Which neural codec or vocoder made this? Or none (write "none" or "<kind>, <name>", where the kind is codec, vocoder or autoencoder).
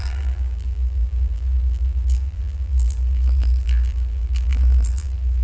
vocoder, BigVGAN v2